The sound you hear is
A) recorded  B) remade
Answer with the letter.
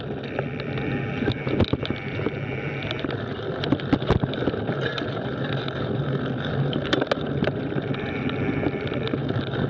A